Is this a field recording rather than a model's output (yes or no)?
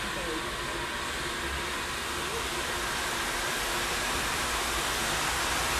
yes